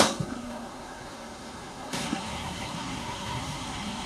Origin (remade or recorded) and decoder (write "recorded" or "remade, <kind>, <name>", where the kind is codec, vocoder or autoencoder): remade, codec, SNAC